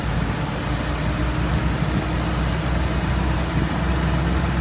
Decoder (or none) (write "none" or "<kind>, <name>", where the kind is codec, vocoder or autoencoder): none